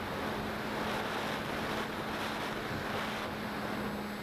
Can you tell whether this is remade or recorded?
recorded